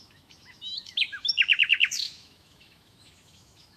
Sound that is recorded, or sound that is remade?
remade